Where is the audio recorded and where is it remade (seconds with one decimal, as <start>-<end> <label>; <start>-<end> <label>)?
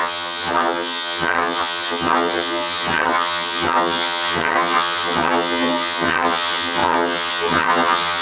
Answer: 0.0-8.2 remade